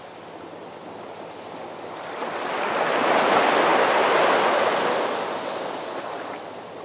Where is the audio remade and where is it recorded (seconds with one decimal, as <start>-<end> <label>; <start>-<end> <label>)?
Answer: 0.0-6.8 recorded